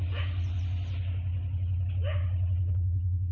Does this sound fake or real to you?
real